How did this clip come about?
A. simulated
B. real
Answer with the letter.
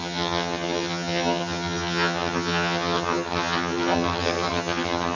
A